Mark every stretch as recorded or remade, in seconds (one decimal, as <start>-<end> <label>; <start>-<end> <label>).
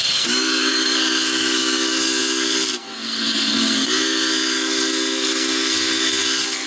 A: 0.0-6.7 remade